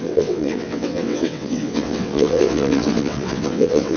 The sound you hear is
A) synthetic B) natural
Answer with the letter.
A